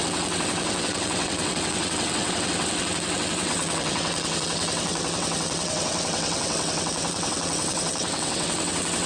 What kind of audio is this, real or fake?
fake